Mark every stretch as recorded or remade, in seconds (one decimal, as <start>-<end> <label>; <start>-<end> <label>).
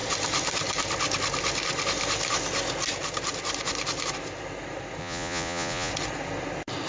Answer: 0.0-5.0 recorded; 5.0-5.9 remade; 5.9-6.9 recorded